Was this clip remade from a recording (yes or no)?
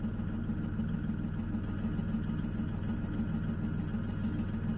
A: no